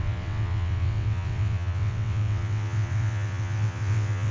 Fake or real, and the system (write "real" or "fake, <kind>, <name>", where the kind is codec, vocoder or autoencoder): fake, vocoder, WaveNeXt